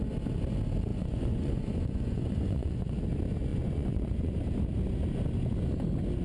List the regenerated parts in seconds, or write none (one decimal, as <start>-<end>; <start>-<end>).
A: 0.9-3.0; 3.5-4.3